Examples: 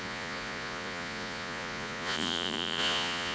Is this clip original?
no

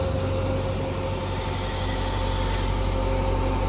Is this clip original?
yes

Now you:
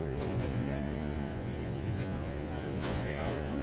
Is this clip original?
no